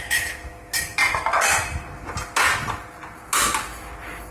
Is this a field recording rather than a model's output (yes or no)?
yes